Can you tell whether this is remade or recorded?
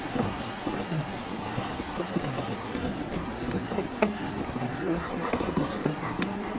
remade